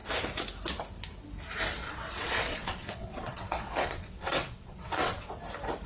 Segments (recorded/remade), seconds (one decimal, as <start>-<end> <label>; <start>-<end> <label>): 0.0-1.8 recorded; 1.8-5.3 remade; 5.3-5.9 recorded